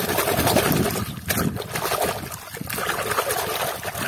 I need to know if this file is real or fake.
real